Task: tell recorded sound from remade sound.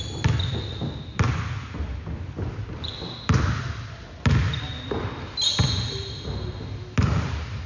recorded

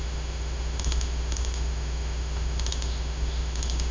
remade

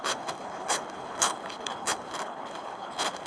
remade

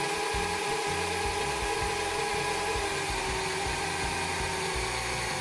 recorded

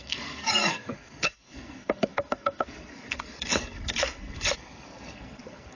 remade